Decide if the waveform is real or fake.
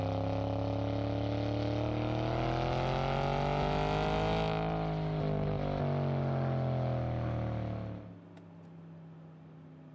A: real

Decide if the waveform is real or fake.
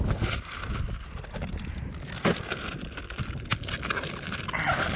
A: real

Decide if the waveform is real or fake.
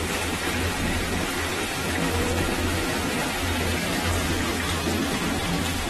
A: real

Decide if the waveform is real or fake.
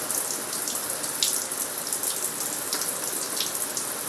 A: real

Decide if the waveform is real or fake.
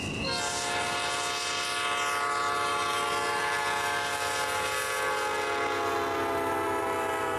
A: real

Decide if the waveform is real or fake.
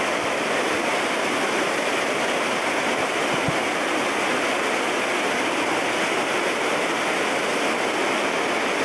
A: real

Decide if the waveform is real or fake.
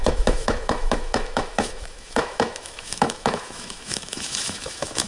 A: fake